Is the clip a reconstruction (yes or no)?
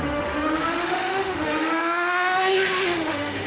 yes